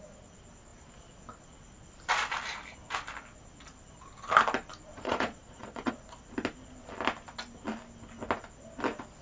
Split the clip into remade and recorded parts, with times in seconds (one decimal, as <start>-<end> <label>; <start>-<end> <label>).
0.0-4.9 recorded; 4.9-5.9 remade; 5.9-9.2 recorded